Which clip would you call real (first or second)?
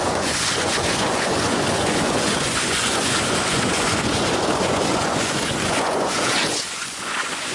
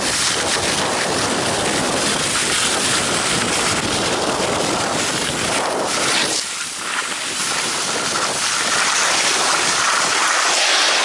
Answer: second